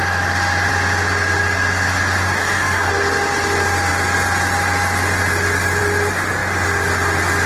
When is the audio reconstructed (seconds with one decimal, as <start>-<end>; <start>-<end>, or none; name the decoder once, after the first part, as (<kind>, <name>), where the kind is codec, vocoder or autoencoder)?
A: 2.4-2.9 (codec, DAC)